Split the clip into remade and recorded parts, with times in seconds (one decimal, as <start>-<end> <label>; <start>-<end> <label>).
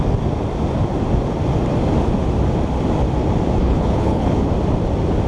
0.0-3.6 recorded; 3.6-4.5 remade; 4.5-5.3 recorded